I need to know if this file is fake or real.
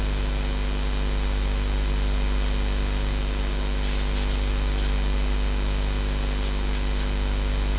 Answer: real